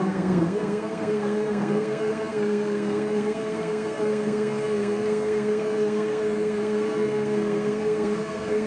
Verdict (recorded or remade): remade